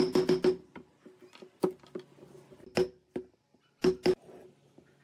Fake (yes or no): no